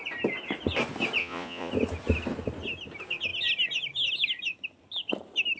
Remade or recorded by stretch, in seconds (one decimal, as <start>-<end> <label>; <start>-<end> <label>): 0.0-1.2 recorded; 1.2-1.7 remade; 1.7-5.6 recorded